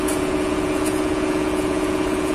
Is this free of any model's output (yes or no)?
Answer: no